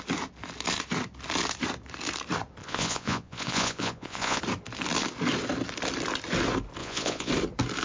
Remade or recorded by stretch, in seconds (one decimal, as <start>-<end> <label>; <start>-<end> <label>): 0.0-2.6 recorded; 2.6-4.4 remade; 4.4-6.8 recorded; 6.8-7.3 remade; 7.3-7.8 recorded